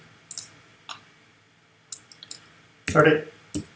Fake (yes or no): no